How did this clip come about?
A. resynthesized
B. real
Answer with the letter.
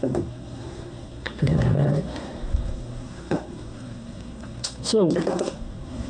A